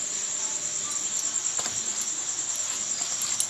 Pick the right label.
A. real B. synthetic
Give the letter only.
A